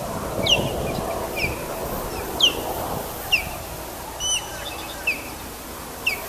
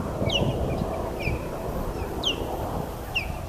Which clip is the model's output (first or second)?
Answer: second